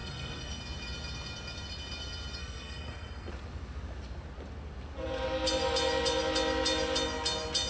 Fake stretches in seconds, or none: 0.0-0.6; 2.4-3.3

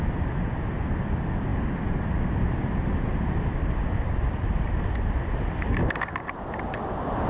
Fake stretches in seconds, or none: none

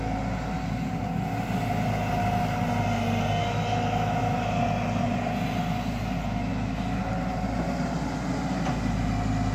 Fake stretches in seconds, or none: 3.4-4.6; 6.5-7.0

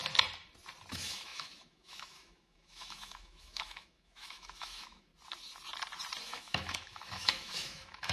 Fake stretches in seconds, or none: 0.9-5.1; 6.2-8.1

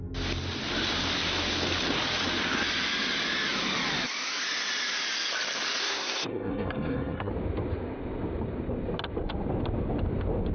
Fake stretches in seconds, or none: 5.8-7.3

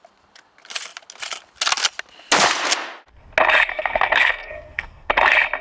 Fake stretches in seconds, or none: 3.7-5.1